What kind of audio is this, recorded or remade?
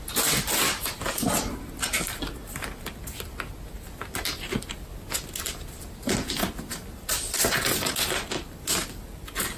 recorded